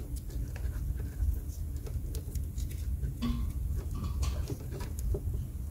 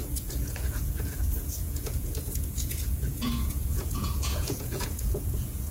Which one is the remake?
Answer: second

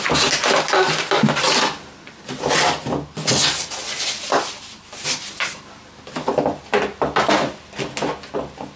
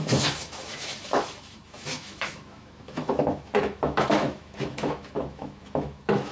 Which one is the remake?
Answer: second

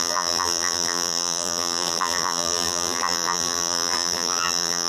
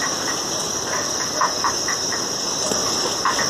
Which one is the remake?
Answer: first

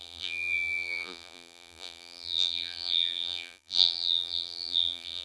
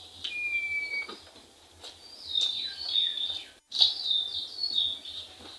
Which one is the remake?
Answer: first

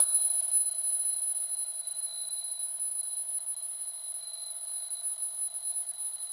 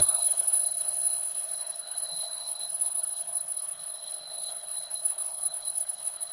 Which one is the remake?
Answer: second